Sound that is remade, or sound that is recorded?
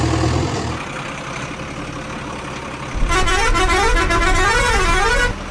recorded